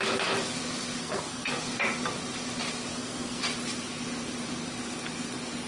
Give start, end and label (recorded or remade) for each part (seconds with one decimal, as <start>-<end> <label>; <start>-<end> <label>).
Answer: 0.0-1.0 recorded; 1.0-1.5 remade; 1.5-2.9 recorded; 2.9-3.4 remade; 3.4-5.7 recorded